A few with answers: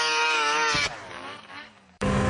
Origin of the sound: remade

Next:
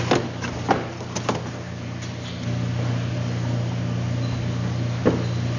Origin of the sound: recorded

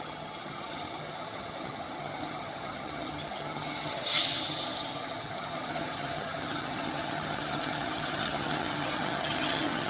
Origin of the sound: remade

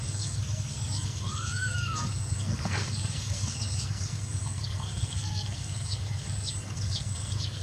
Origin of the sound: remade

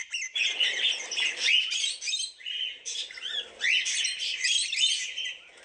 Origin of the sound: recorded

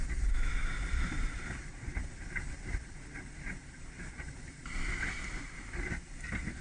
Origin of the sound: recorded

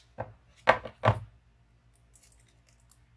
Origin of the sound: recorded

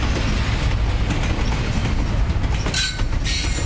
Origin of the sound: recorded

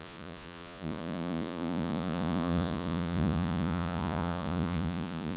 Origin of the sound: remade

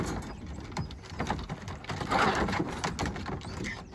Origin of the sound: recorded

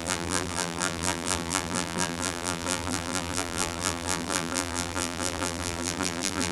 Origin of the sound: remade